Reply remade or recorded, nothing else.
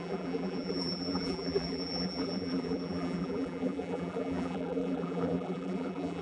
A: remade